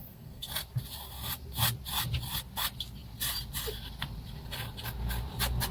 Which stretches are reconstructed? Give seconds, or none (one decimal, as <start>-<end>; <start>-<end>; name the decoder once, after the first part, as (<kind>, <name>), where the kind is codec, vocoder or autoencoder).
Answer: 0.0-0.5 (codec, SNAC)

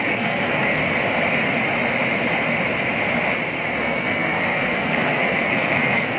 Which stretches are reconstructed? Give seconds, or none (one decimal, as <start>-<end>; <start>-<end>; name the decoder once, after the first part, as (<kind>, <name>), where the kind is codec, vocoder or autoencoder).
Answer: 0.0-0.8 (codec, SNAC); 3.8-6.2

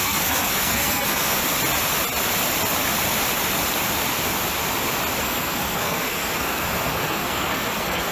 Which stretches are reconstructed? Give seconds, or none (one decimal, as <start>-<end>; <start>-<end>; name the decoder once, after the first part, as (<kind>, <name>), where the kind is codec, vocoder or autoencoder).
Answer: 0.0-1.4 (codec, SNAC); 5.2-8.1